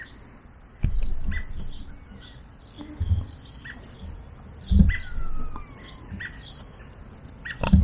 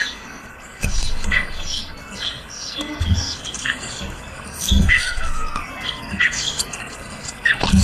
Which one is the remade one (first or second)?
second